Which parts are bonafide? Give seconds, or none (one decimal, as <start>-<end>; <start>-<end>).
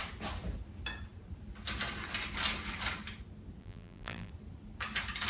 0.0-3.6; 4.3-5.3